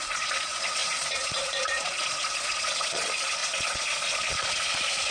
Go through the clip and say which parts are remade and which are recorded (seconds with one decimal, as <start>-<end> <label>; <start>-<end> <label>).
0.0-5.1 remade